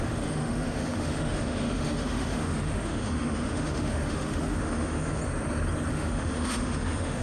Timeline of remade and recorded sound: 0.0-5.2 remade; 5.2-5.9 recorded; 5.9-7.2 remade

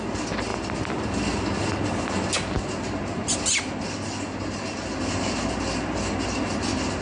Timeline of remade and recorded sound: 0.0-7.0 recorded

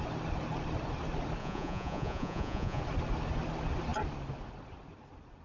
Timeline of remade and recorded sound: 0.0-1.4 recorded; 1.4-2.8 remade; 2.8-5.4 recorded

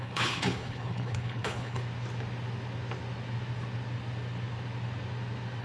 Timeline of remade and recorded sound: 0.0-1.8 remade; 1.8-5.6 recorded

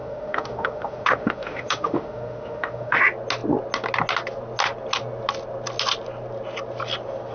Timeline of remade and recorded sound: 0.0-3.0 remade; 3.0-7.3 recorded